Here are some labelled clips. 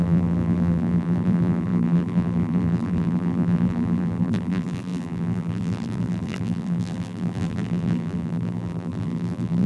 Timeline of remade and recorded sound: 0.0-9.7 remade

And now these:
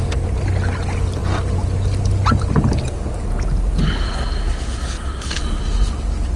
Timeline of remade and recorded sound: 0.0-6.4 recorded